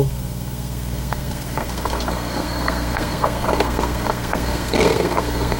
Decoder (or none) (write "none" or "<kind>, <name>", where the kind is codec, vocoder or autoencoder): codec, SNAC